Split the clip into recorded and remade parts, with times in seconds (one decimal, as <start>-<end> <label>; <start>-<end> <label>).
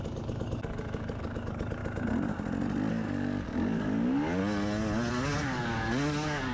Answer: 0.0-1.8 remade; 1.8-2.9 recorded; 2.9-4.4 remade; 4.4-5.1 recorded; 5.1-6.5 remade